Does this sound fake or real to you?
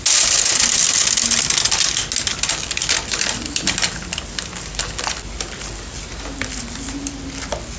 real